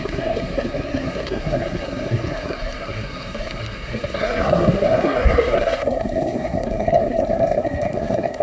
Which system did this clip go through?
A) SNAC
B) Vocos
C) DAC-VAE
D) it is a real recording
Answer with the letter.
A